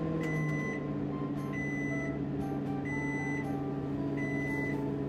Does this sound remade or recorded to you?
recorded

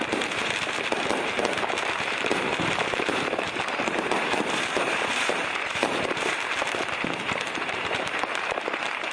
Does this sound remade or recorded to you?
remade